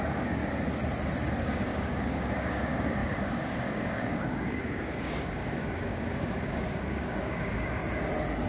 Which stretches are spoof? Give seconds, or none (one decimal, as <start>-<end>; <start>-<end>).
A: 0.0-0.4; 1.3-7.8